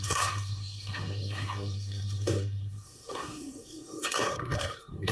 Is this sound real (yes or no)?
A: no